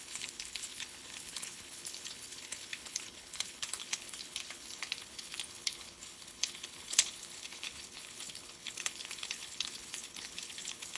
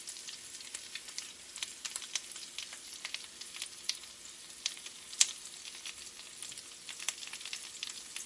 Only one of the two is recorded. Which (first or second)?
second